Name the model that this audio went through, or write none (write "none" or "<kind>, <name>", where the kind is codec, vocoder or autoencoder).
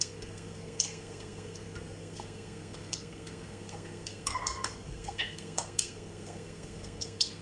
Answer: codec, SNAC